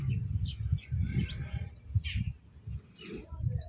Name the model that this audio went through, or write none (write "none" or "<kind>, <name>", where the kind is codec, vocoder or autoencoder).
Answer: none